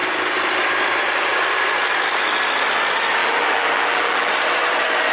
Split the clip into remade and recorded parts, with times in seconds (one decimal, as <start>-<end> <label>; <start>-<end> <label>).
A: 0.0-3.2 recorded; 3.2-4.3 remade; 4.3-5.1 recorded